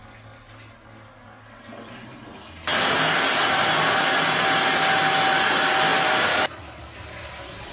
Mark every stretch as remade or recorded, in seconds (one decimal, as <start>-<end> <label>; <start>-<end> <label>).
0.0-7.7 recorded